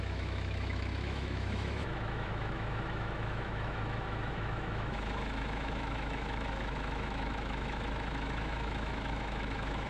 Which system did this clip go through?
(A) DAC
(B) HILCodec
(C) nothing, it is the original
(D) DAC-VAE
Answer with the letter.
D